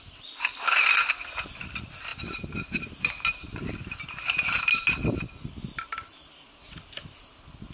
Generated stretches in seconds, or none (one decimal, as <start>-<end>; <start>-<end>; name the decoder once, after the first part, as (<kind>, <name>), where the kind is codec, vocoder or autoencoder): 2.1-3.1 (vocoder, BigVGAN v2)